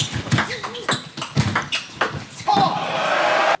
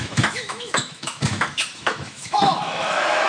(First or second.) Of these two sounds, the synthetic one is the second